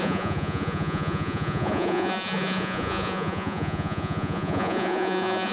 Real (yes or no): no